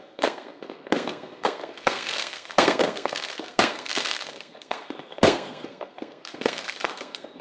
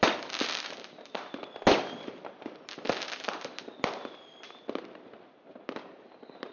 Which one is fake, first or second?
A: first